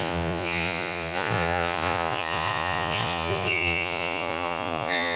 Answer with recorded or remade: remade